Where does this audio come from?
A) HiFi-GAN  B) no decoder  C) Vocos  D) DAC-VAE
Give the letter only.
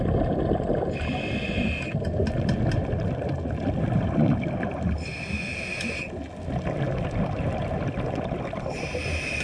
B